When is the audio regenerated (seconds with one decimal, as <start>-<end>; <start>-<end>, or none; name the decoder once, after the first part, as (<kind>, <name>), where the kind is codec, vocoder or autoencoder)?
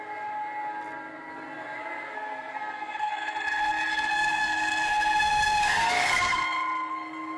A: 1.8-3.1 (codec, SNAC); 3.9-6.4